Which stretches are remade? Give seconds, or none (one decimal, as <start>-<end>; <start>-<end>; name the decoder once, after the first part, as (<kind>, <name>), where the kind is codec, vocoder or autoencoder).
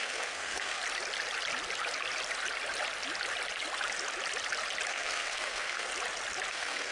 0.0-0.8 (codec, SNAC); 4.9-5.9; 6.5-6.9